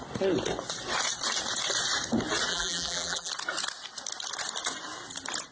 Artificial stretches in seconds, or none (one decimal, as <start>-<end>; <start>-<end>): 2.5-3.3